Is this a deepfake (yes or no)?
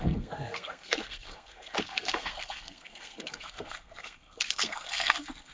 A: yes